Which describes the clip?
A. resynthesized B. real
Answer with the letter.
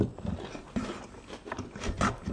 B